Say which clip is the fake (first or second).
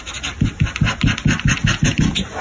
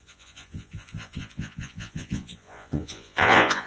second